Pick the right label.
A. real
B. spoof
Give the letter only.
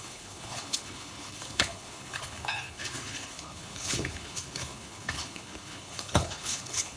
B